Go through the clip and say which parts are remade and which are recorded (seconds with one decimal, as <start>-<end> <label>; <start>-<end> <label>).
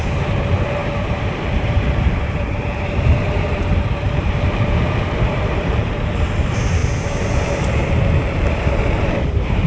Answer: 0.0-6.8 remade; 6.8-8.5 recorded; 8.5-9.7 remade